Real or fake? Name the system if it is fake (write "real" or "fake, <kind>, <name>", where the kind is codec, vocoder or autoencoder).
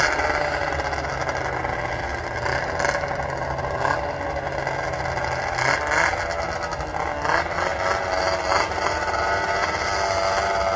real